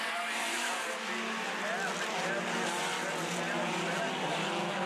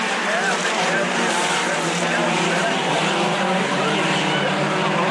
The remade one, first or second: second